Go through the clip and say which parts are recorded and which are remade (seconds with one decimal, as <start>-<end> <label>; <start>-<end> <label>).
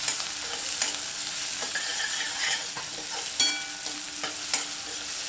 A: 0.0-1.6 recorded; 1.6-2.8 remade; 2.8-5.3 recorded